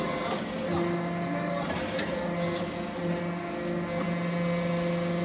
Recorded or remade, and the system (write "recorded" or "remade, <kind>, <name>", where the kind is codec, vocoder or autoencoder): recorded